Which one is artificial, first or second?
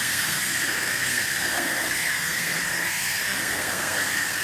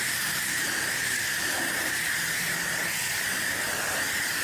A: first